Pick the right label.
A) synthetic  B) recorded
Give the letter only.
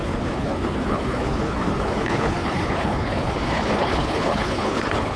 A